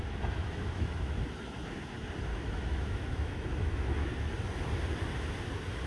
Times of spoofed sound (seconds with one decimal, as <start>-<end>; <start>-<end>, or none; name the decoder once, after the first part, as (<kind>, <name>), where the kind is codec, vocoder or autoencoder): 0.4-1.2 (autoencoder, DAC-VAE); 2.3-4.1

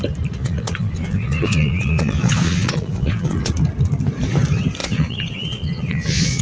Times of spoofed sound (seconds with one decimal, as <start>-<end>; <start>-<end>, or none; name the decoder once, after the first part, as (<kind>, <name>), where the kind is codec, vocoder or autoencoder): 0.4-3.5 (vocoder, Vocos); 4.8-6.4

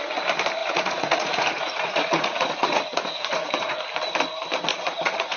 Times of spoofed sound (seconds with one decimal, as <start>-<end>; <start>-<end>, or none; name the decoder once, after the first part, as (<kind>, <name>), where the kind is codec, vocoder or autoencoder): 0.6-3.8 (vocoder, Vocos); 4.7-5.4

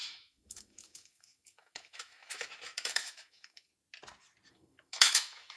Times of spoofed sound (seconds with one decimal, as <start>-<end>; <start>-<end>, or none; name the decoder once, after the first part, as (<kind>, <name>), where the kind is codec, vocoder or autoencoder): 0.0-3.7 (autoencoder, DAC-VAE); 4.5-5.6

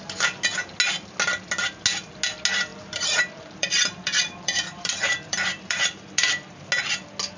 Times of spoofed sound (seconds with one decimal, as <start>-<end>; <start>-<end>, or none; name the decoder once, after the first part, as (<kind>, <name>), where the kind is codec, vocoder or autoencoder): 2.7-6.7 (vocoder, BigVGAN v2)

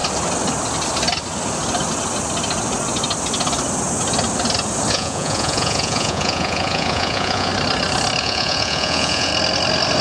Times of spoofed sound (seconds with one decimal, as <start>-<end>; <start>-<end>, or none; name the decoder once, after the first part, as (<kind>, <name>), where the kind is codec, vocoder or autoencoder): 4.9-7.5 (vocoder, Vocos); 8.2-9.3

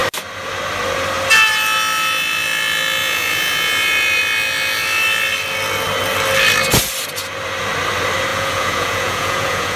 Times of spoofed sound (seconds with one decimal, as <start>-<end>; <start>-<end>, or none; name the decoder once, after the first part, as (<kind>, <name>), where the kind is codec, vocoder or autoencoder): 3.0-4.2 (vocoder, Vocos); 8.3-9.8

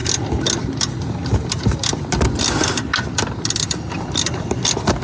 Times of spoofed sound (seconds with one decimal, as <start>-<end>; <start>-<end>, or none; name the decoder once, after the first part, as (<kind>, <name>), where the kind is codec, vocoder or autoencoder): none